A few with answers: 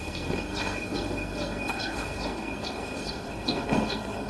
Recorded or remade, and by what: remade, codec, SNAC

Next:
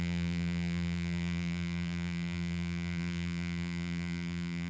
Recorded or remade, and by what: remade, vocoder, BigVGAN v2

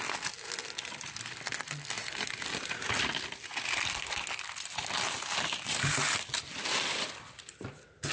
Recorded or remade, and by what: recorded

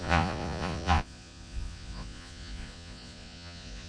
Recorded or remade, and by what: remade, vocoder, Vocos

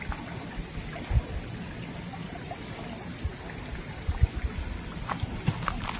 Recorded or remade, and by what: recorded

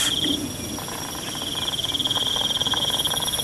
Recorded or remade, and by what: recorded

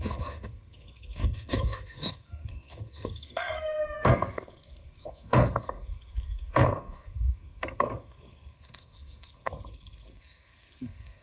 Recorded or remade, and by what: remade, codec, SNAC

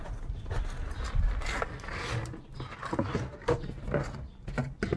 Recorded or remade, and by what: recorded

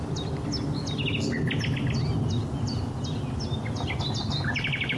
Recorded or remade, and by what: recorded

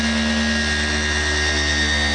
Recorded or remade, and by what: recorded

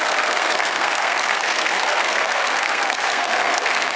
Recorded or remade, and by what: remade, codec, SNAC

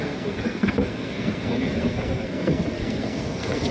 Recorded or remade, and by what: remade, codec, SNAC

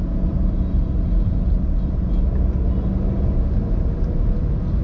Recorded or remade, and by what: recorded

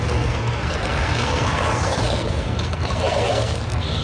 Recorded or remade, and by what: remade, codec, SNAC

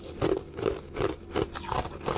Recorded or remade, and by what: recorded